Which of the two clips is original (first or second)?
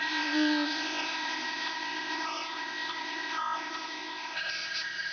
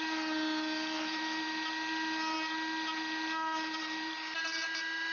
second